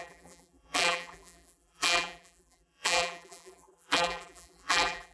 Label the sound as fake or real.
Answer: fake